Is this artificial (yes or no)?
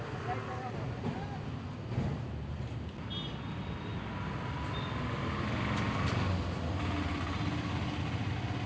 no